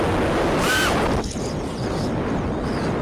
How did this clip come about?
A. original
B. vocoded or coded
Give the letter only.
A